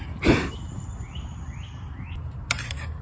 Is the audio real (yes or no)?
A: yes